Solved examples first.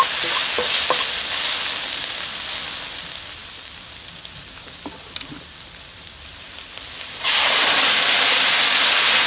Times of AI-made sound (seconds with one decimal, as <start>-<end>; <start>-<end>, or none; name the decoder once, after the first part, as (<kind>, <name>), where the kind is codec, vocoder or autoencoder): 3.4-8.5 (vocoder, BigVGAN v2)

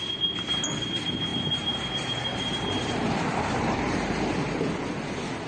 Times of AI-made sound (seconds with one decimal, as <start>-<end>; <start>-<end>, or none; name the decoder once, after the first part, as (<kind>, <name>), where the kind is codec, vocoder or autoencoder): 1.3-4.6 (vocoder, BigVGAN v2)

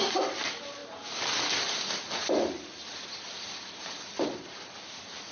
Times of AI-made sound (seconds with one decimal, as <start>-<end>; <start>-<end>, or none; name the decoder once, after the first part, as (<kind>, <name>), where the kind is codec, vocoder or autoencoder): none

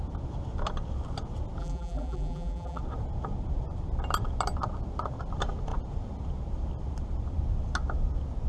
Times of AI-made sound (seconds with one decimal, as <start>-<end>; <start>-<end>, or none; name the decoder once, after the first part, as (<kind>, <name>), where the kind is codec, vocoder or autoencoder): 1.6-2.8 (vocoder, BigVGAN v2)

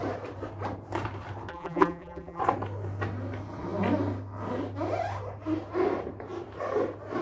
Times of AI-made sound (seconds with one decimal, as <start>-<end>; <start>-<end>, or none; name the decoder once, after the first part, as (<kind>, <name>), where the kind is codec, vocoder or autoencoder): 1.5-2.4 (vocoder, BigVGAN v2)